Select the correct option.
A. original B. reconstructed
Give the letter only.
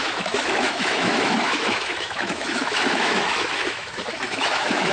B